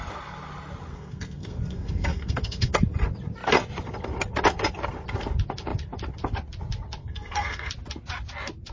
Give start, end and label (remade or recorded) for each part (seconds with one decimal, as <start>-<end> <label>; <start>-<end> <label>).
0.0-0.9 recorded; 0.9-2.8 remade; 2.8-7.0 recorded; 7.0-7.7 remade; 7.7-8.7 recorded